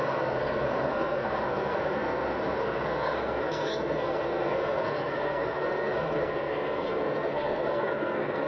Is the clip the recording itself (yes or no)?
no